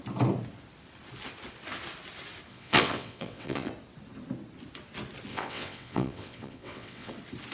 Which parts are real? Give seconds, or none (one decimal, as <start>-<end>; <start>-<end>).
0.0-2.5; 3.7-5.3; 7.1-7.5